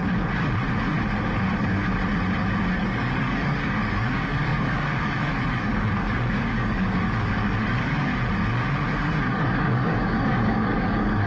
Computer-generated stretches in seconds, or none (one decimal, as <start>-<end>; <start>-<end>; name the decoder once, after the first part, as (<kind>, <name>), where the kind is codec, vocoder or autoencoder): 2.8-8.1 (codec, DAC); 9.0-11.3